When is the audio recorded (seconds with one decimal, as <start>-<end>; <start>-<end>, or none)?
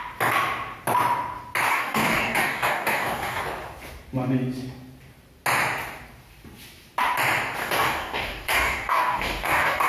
0.0-1.7; 3.4-7.6